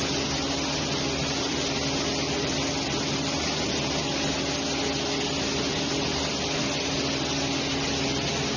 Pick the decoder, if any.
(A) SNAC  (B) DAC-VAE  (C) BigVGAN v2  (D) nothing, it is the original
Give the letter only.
D